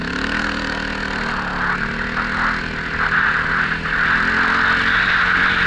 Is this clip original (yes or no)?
yes